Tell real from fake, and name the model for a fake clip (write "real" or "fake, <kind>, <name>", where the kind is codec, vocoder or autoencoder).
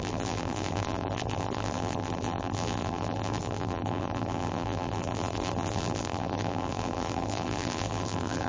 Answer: fake, vocoder, BigVGAN v2